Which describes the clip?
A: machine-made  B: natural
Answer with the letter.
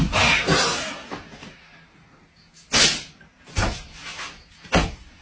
B